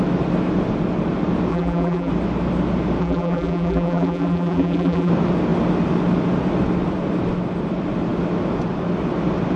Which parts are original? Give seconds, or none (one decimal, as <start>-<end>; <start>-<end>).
0.0-1.5; 2.1-3.0; 5.1-9.6